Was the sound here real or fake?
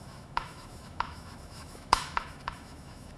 fake